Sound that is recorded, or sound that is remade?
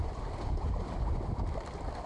recorded